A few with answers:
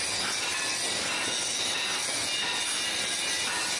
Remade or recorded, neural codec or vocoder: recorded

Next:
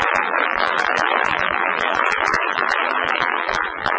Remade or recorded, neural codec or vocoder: remade, vocoder, BigVGAN v2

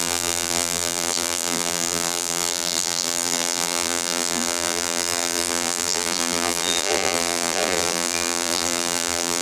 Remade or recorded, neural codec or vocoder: remade, vocoder, BigVGAN v2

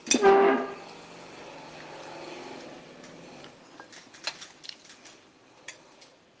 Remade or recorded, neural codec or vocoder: recorded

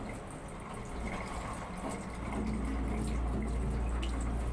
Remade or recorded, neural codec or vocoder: recorded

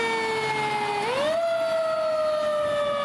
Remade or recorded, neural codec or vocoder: recorded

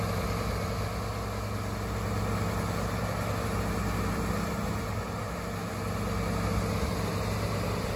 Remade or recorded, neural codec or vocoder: recorded